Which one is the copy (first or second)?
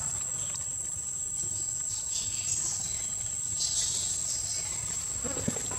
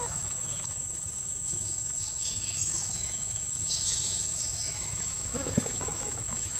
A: second